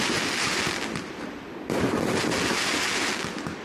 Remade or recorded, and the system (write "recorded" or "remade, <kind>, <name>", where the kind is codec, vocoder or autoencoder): recorded